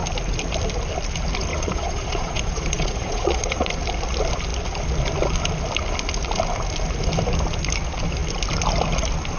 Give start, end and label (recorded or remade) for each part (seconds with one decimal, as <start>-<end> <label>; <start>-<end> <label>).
0.0-1.5 recorded; 1.5-3.7 remade; 3.7-9.4 recorded